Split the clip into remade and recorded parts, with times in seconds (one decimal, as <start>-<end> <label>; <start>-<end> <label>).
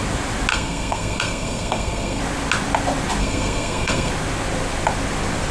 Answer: 0.0-0.5 recorded; 0.5-2.2 remade; 2.2-3.2 recorded; 3.2-4.1 remade; 4.1-5.5 recorded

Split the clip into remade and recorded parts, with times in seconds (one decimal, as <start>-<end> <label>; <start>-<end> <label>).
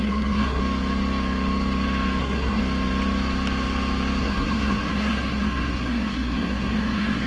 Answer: 0.0-0.6 remade; 0.6-2.2 recorded; 2.2-2.6 remade; 2.6-4.2 recorded; 4.2-7.3 remade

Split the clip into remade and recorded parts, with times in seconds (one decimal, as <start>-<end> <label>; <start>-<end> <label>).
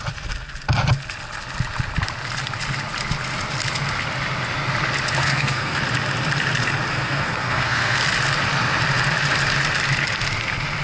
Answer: 0.0-5.2 recorded; 5.2-5.8 remade; 5.8-6.9 recorded; 6.9-8.0 remade; 8.0-10.8 recorded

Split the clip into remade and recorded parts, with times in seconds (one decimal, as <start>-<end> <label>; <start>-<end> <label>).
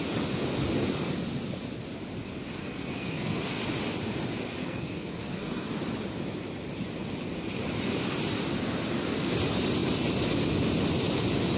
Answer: 0.0-2.6 recorded; 2.6-3.6 remade; 3.6-4.6 recorded; 4.6-5.7 remade; 5.7-11.6 recorded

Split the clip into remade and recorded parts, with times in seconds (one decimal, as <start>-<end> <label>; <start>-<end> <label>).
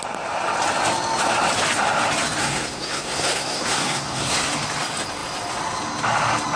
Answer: 0.0-2.4 recorded; 2.4-4.5 remade; 4.5-6.6 recorded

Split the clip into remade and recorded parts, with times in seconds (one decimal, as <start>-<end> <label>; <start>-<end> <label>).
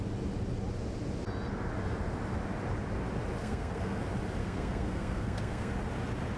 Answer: 0.0-3.4 recorded; 3.4-4.0 remade; 4.0-4.4 recorded; 4.4-5.7 remade; 5.7-6.4 recorded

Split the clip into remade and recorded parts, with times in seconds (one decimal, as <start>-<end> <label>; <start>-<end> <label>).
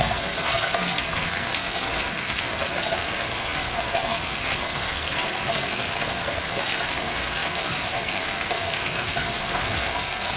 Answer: 0.0-10.4 remade